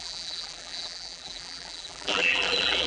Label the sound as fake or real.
fake